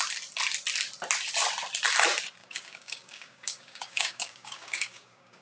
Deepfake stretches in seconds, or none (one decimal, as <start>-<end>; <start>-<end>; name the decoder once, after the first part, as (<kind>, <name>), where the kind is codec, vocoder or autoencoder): 2.4-5.4 (codec, DAC)